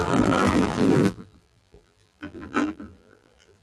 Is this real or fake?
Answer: fake